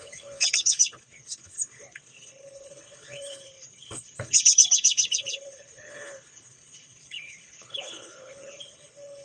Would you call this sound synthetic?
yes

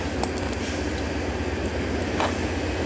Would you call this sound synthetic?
no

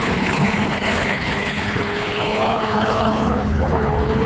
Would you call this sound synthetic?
yes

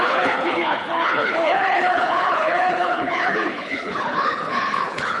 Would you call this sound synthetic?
yes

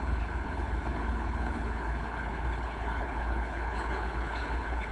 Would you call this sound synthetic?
yes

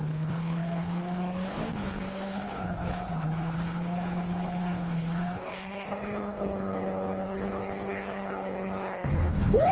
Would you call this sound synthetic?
yes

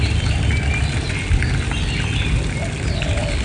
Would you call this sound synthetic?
no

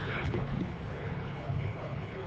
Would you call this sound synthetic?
yes